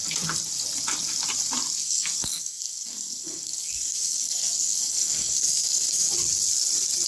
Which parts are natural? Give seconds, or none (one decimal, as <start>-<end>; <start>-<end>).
0.0-1.8; 6.1-7.1

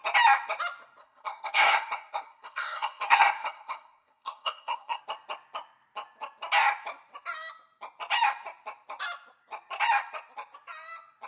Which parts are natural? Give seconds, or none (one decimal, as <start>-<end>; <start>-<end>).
0.0-1.0; 5.0-11.3

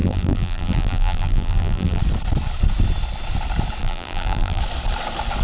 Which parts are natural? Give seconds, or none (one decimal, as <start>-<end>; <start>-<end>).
2.0-3.8; 4.6-5.4

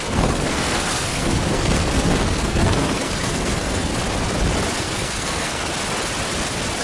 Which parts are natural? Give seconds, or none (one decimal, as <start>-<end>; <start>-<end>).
3.9-4.8; 5.7-6.8

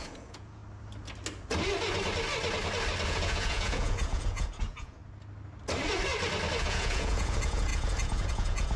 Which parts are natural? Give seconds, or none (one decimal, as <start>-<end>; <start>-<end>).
0.6-3.1; 5.0-6.6

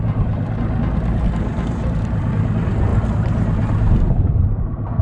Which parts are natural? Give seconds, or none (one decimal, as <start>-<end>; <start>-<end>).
0.0-1.5; 2.3-2.9

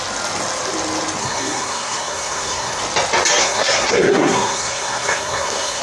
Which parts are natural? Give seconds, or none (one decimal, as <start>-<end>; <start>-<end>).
0.0-1.2; 2.8-3.4